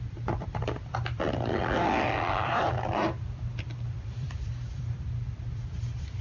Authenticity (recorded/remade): remade